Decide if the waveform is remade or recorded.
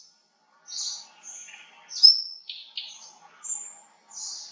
recorded